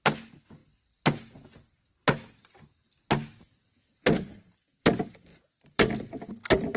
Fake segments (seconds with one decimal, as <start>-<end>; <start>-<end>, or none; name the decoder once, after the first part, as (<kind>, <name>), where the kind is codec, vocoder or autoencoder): 5.3-6.3 (vocoder, BigVGAN v2)